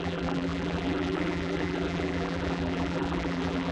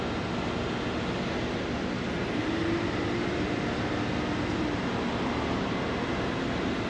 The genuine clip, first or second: second